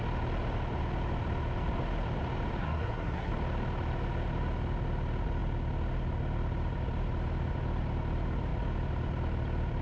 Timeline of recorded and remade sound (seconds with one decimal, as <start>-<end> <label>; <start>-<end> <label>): 0.0-2.6 recorded; 2.6-3.3 remade; 3.3-9.8 recorded